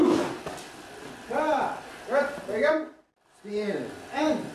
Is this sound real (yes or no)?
yes